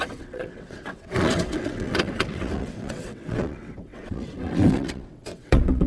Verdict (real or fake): fake